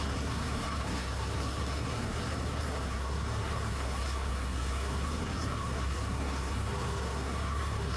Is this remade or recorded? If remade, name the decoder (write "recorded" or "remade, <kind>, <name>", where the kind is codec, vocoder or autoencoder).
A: remade, codec, SNAC